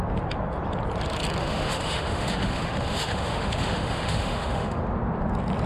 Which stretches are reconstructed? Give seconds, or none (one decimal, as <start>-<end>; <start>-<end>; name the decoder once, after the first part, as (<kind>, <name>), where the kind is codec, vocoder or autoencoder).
1.4-4.8 (autoencoder, DAC-VAE)